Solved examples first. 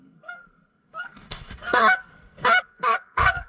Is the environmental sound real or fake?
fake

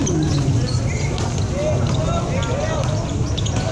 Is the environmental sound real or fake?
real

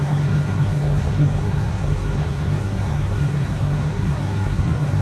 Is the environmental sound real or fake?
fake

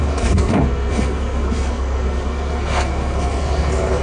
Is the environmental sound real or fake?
fake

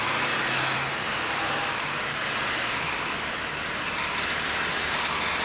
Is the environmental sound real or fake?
real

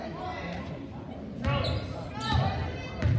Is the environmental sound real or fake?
real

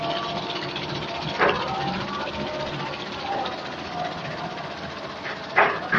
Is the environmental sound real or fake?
real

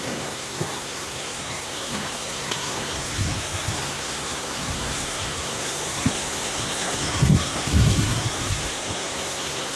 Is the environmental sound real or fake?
fake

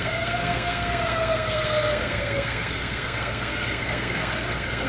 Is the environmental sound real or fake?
fake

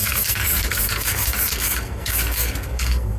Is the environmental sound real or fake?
fake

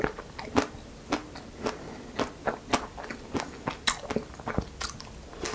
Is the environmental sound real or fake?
real